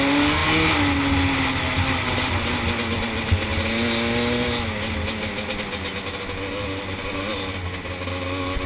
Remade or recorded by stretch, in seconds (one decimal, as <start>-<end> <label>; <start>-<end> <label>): 0.0-8.7 recorded